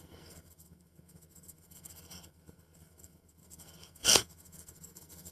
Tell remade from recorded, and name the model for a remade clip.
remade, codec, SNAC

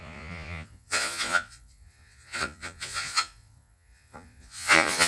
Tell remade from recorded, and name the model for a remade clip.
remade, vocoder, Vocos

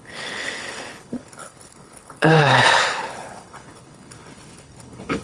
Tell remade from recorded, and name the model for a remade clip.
remade, codec, HILCodec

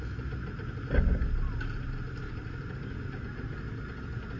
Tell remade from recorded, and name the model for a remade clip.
recorded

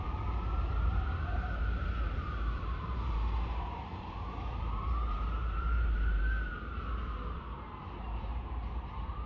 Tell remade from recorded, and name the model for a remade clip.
remade, vocoder, BigVGAN v2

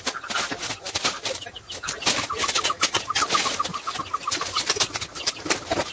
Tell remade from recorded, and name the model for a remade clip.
recorded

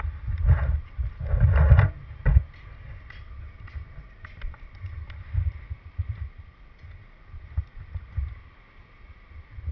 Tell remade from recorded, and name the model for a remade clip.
recorded